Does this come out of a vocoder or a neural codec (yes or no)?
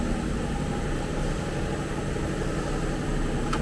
no